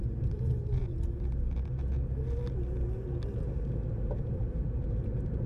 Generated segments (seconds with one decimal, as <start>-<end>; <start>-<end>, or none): 0.0-0.8; 4.1-5.5